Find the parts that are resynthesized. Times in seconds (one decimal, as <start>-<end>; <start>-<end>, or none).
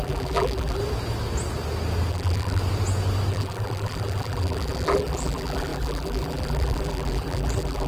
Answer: 0.0-0.8; 2.1-2.6; 3.3-7.9